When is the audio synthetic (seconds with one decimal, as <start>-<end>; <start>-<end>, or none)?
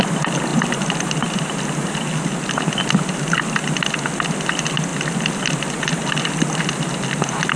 none